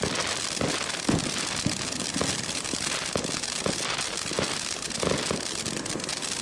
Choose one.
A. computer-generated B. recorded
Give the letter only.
B